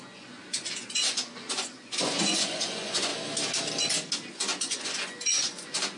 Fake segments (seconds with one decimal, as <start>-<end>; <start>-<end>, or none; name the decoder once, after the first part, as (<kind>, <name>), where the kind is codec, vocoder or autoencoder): 0.0-3.1 (vocoder, Vocos); 4.3-6.0